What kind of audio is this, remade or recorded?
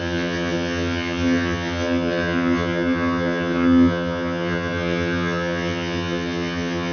remade